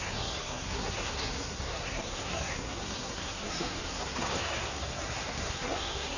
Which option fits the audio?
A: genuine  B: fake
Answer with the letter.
B